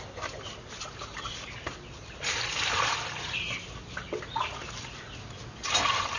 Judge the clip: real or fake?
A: real